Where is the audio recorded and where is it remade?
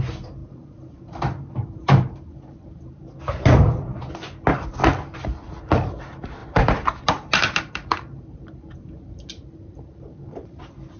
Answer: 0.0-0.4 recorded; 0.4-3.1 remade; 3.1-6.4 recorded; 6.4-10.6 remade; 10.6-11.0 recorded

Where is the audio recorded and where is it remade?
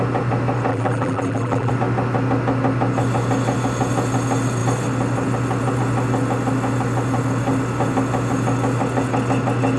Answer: 0.0-0.7 recorded; 0.7-1.7 remade; 1.7-9.8 recorded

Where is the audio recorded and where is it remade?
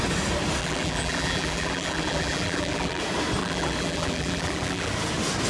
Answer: 0.0-0.6 recorded; 0.6-3.0 remade; 3.0-3.4 recorded; 3.4-4.9 remade; 4.9-5.5 recorded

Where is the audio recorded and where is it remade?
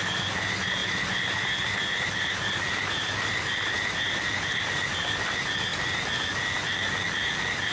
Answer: 0.0-7.7 recorded